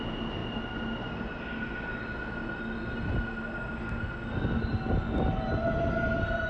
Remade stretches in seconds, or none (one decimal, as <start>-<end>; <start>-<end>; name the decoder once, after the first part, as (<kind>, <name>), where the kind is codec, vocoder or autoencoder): none

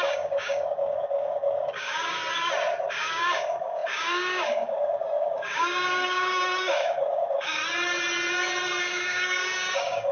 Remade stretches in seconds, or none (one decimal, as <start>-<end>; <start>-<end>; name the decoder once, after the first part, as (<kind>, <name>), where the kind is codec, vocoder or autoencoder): 0.0-2.2 (codec, DAC); 2.9-7.6; 8.8-10.1

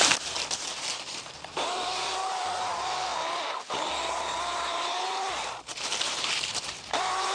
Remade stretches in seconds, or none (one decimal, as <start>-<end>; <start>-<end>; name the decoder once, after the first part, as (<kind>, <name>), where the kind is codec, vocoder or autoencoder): 0.0-3.1 (vocoder, BigVGAN v2); 4.0-7.3